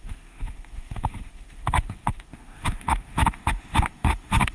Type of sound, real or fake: fake